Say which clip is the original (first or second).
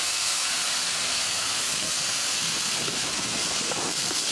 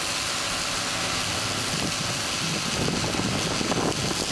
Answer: second